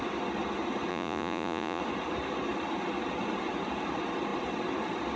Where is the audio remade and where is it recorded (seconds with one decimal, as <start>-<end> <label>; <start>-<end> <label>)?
0.0-0.9 recorded; 0.9-1.8 remade; 1.8-5.2 recorded